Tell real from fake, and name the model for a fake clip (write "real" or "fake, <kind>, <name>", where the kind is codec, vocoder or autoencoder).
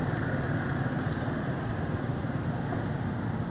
real